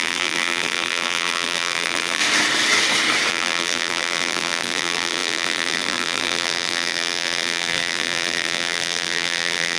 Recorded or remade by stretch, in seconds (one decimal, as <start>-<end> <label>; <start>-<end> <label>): 0.0-2.2 remade; 2.2-3.3 recorded; 3.3-9.8 remade

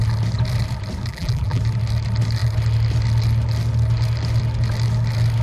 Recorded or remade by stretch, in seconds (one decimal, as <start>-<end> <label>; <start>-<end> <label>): 0.0-1.1 recorded; 1.1-1.6 remade; 1.6-5.4 recorded

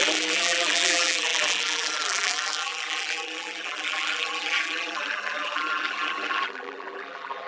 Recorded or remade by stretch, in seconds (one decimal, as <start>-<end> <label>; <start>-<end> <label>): 0.0-7.5 remade

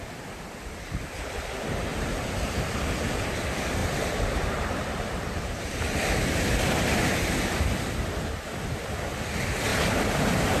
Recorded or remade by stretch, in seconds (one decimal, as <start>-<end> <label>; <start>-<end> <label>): 0.0-1.9 recorded; 1.9-2.7 remade; 2.7-3.8 recorded; 3.8-5.8 remade; 5.8-10.6 recorded

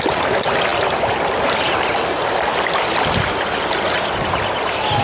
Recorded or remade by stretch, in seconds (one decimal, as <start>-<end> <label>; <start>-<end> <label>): 0.0-0.7 recorded; 0.7-2.7 remade; 2.7-5.0 recorded

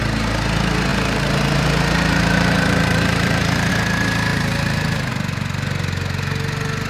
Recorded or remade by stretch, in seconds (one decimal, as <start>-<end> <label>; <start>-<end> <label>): 0.0-0.9 recorded; 0.9-3.7 remade; 3.7-4.3 recorded; 4.3-5.1 remade; 5.1-6.9 recorded

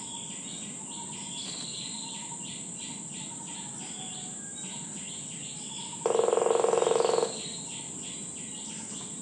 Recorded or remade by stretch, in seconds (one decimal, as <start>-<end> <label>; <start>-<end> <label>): 0.0-4.5 recorded; 4.5-5.4 remade; 5.4-9.2 recorded

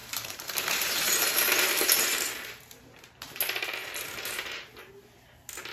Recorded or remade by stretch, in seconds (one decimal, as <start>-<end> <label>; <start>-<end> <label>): 0.0-3.4 remade; 3.4-3.8 recorded; 3.8-4.9 remade; 4.9-5.7 recorded